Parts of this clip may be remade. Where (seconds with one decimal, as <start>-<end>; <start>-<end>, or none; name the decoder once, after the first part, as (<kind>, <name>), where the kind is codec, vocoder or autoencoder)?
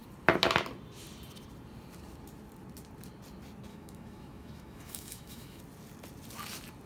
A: 3.7-5.6 (autoencoder, DAC-VAE)